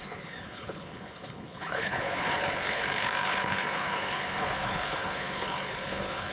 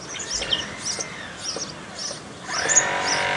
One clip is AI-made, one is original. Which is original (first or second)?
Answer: second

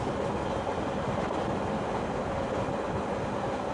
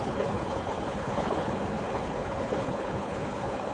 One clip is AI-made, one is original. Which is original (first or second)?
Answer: first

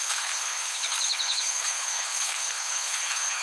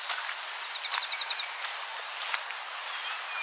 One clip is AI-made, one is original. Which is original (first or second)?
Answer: second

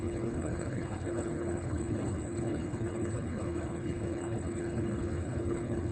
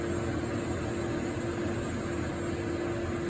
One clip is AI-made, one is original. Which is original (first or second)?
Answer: second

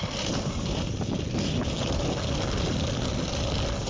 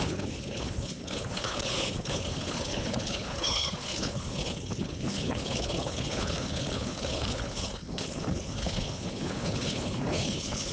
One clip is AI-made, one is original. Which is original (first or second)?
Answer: first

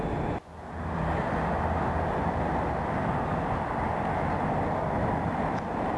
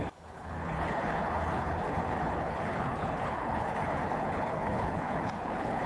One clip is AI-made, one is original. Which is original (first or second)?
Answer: first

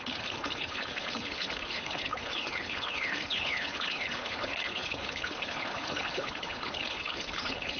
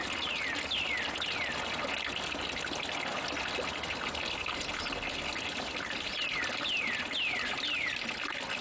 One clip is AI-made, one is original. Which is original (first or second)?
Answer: second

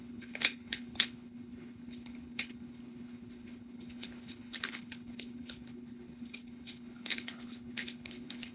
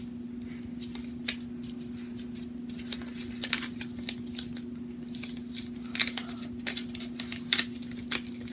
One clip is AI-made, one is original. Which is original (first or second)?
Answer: second